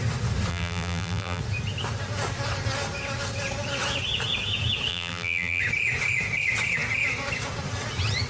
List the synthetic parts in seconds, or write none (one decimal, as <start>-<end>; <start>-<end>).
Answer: 0.5-1.4; 4.9-5.6